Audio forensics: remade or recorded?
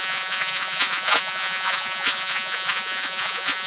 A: remade